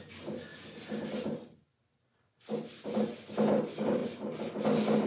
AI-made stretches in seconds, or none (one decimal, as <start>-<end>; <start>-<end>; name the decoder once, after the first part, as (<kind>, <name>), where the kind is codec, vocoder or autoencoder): none

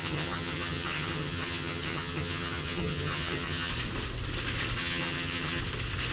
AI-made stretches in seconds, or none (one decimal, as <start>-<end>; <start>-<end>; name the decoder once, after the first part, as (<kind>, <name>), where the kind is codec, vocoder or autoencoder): 0.0-3.7 (vocoder, HiFi-GAN); 4.8-5.6